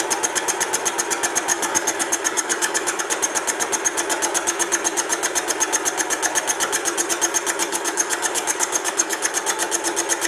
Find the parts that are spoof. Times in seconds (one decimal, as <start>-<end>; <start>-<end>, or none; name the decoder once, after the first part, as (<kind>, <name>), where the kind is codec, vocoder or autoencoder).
1.5-3.0 (codec, DAC); 7.7-9.3